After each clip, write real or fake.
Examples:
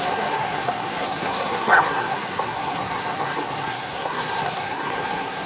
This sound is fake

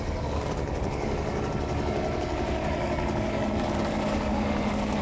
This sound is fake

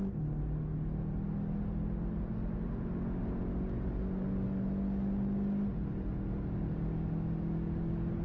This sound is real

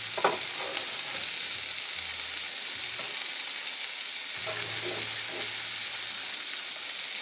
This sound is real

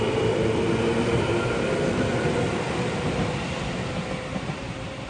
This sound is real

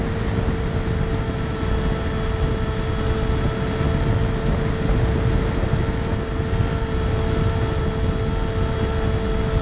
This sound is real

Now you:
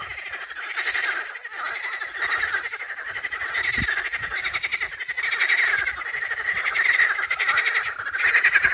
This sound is real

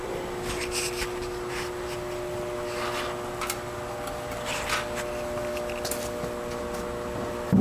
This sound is real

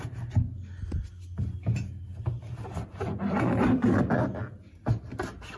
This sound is real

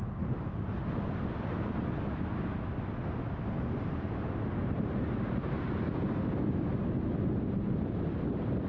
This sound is real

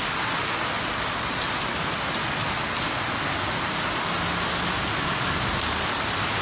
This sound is real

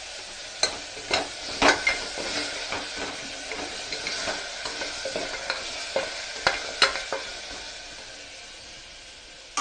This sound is real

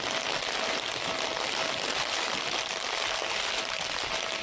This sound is real